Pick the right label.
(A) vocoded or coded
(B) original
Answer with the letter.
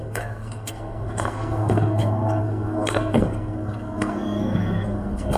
A